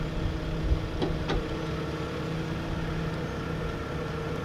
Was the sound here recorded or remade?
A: recorded